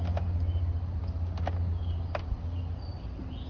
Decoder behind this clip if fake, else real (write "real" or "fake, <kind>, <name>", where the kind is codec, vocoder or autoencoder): real